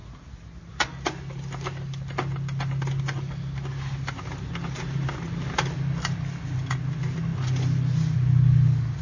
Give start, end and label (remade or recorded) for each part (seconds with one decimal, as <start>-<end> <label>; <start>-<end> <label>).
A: 0.0-9.0 recorded